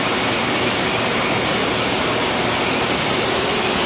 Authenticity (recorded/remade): recorded